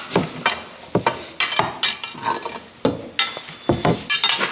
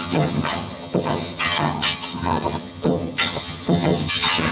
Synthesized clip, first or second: second